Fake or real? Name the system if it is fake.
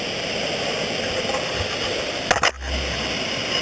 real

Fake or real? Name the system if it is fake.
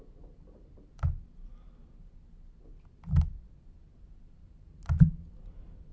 real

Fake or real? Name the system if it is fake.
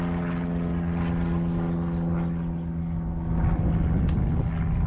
real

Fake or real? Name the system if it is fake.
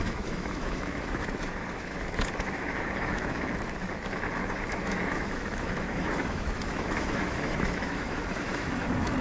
fake, autoencoder, DAC-VAE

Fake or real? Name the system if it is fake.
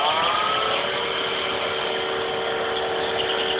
real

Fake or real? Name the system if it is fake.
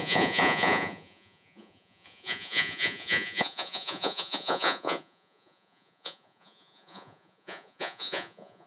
fake, vocoder, Vocos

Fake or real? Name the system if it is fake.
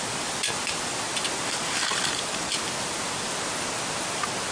real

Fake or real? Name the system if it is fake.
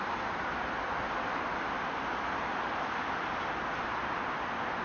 real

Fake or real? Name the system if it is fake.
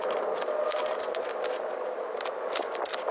real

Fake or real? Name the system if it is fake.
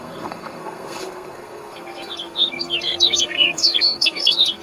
fake, codec, SNAC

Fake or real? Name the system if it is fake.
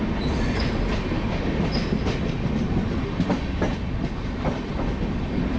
real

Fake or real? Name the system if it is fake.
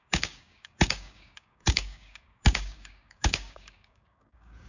fake, codec, DAC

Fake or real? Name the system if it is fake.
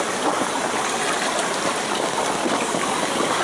real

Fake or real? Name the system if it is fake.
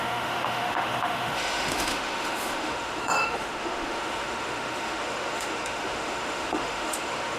fake, autoencoder, DAC-VAE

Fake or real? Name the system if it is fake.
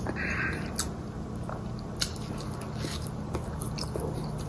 real